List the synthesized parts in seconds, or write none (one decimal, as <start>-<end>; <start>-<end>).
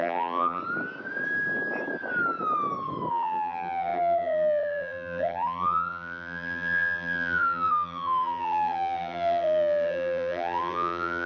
0.0-0.6; 3.1-11.3